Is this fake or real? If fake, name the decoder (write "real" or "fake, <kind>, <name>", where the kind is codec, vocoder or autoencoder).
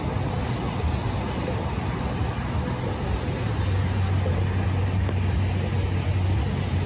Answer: real